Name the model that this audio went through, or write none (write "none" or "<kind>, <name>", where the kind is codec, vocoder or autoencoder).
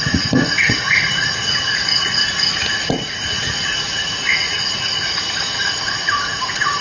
vocoder, Vocos